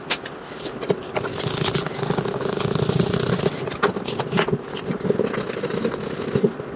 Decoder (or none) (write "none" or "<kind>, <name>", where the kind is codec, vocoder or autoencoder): none